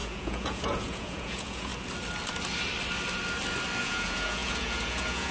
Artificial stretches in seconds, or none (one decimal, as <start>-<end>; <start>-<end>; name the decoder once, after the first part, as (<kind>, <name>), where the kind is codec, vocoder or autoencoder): 0.0-1.7 (vocoder, Vocos); 3.8-5.3